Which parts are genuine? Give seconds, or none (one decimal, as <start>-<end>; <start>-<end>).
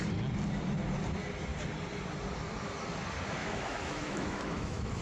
0.0-3.4